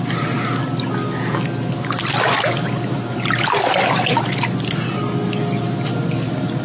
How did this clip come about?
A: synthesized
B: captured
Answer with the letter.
B